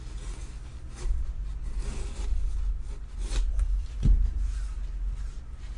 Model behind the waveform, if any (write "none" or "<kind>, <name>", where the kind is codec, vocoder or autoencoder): none